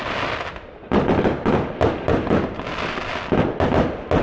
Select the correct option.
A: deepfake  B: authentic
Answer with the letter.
B